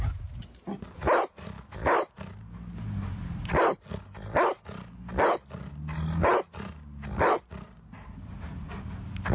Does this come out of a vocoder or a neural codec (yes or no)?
no